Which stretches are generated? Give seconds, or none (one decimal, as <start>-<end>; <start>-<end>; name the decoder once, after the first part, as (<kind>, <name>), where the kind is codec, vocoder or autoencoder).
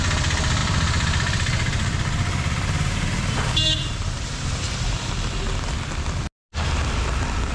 0.6-5.1 (vocoder, BigVGAN v2)